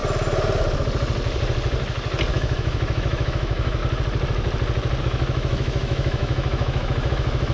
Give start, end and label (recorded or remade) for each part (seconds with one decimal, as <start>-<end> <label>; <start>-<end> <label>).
0.0-2.3 recorded; 2.3-3.8 remade; 3.8-5.0 recorded; 5.0-7.5 remade